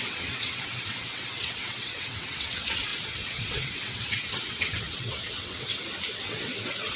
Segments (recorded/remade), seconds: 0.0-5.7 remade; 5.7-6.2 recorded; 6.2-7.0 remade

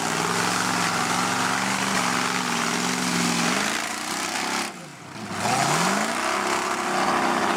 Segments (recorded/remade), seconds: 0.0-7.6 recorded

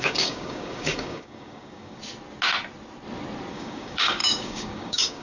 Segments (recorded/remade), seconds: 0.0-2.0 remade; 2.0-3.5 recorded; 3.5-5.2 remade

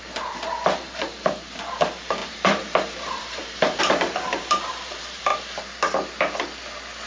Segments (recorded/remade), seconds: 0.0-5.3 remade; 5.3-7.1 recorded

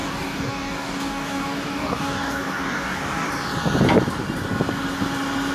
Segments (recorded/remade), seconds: 0.0-3.3 remade; 3.3-5.5 recorded